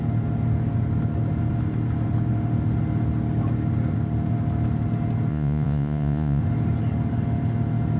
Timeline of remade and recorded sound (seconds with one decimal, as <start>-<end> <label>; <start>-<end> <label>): 0.0-5.3 recorded; 5.3-6.4 remade; 6.4-8.0 recorded